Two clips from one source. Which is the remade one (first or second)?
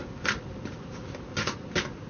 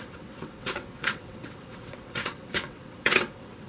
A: second